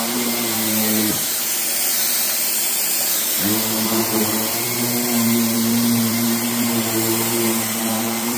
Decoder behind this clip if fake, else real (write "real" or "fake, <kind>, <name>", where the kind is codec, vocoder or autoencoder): fake, vocoder, BigVGAN v2